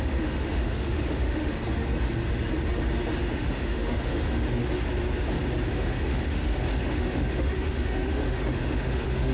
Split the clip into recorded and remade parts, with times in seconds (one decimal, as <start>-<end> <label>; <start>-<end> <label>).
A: 0.0-1.5 remade; 1.5-3.2 recorded; 3.2-4.6 remade; 4.6-5.7 recorded; 5.7-9.3 remade